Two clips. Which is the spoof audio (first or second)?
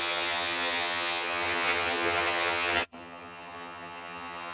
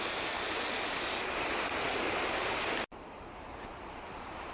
first